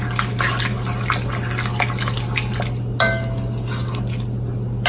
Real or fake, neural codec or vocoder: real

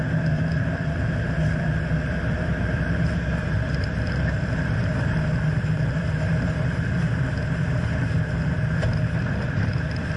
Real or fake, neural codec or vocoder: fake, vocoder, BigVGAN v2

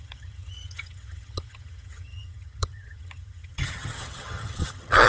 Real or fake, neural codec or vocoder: fake, vocoder, HiFi-GAN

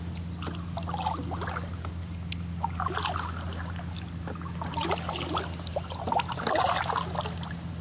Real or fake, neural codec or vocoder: real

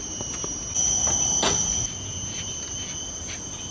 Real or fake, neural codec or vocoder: real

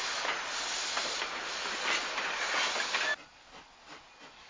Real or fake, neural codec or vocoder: real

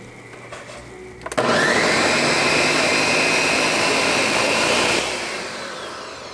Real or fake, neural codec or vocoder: real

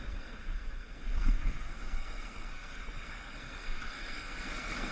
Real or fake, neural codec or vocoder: fake, codec, SNAC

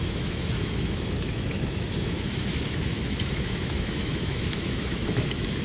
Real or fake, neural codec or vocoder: fake, autoencoder, DAC-VAE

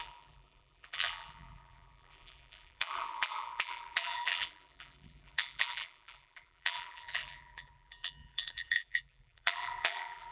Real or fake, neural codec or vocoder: fake, vocoder, BigVGAN v2